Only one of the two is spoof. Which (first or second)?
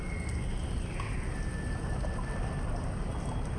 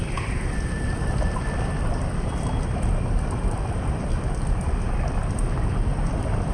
second